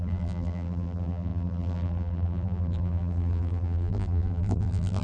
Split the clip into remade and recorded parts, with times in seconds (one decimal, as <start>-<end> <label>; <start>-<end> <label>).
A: 0.0-5.0 remade